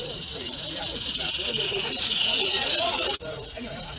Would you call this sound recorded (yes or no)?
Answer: no